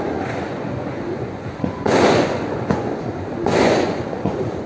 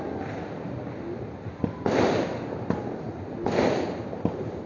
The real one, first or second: second